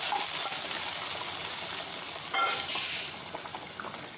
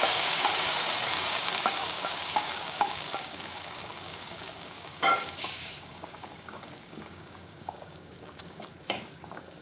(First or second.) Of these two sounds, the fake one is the second